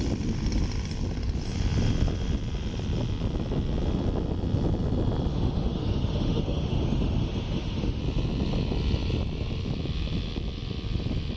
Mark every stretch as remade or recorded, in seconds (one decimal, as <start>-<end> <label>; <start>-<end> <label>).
0.0-5.3 recorded; 5.3-8.0 remade; 8.0-11.4 recorded